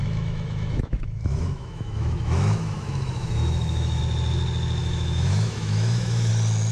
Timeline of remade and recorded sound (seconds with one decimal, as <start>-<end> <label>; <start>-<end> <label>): 0.0-4.0 remade; 4.0-4.8 recorded; 4.8-6.3 remade; 6.3-6.7 recorded